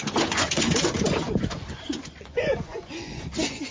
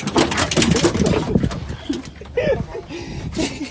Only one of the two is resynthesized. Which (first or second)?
first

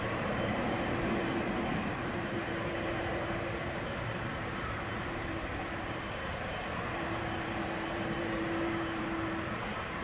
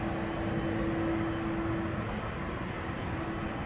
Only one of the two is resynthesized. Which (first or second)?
first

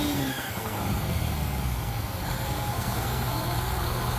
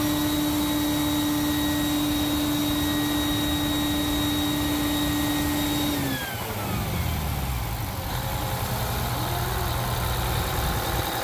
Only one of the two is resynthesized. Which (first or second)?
first